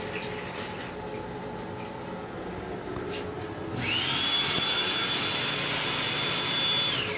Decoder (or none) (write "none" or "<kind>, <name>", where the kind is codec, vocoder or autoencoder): none